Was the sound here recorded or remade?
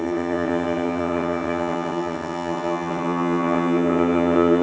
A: remade